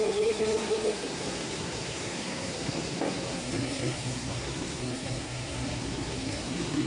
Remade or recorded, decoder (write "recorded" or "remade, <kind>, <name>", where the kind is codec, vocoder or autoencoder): remade, codec, SNAC